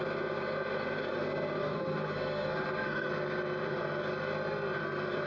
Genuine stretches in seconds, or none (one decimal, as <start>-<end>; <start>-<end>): 0.0-1.6; 3.1-5.3